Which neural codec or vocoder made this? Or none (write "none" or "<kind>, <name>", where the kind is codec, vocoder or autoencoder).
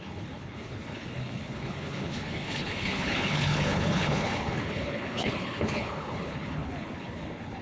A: codec, HILCodec